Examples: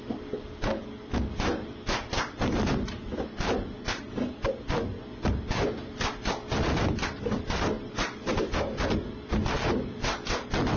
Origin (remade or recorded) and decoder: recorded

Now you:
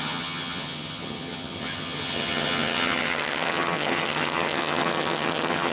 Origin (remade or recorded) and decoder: remade, vocoder, HiFi-GAN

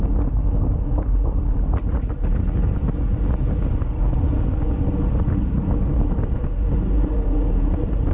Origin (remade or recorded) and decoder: recorded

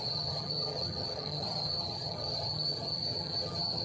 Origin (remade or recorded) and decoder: remade, vocoder, HiFi-GAN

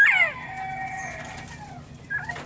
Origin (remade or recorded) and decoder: recorded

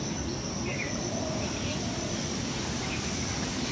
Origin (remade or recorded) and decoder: recorded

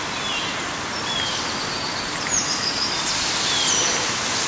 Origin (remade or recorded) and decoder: recorded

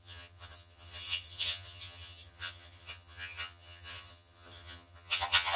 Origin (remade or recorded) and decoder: remade, vocoder, HiFi-GAN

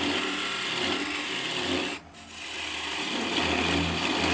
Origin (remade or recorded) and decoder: recorded